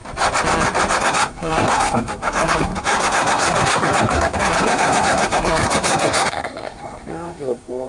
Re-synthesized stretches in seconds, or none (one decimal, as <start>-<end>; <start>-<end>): 1.0-7.9